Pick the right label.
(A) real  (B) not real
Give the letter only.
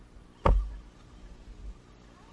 A